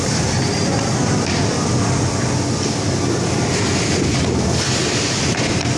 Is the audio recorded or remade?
recorded